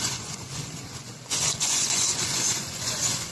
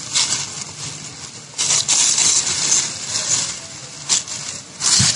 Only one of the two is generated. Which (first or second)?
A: first